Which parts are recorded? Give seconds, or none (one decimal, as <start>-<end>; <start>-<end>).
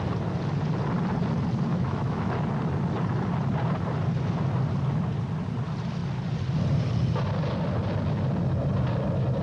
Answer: 0.0-1.7; 2.3-9.4